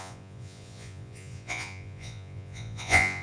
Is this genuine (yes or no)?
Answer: no